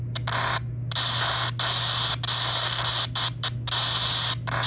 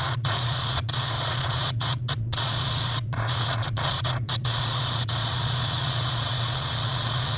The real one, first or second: first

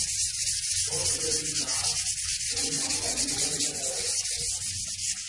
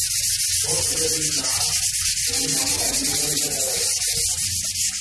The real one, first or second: second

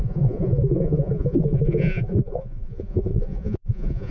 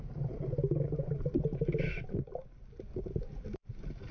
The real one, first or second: second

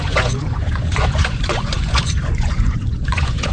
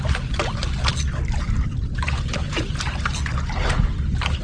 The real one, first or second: second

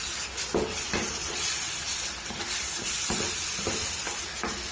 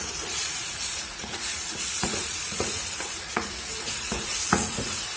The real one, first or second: first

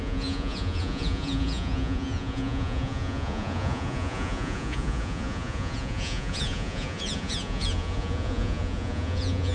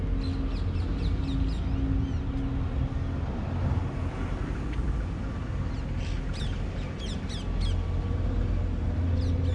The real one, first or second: second